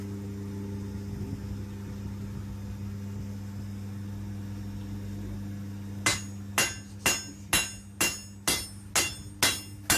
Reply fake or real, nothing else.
real